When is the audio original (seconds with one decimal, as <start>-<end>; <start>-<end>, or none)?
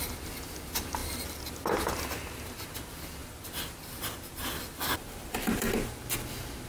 0.0-3.2; 5.9-6.7